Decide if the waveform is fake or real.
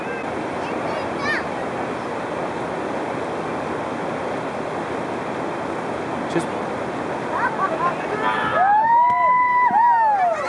real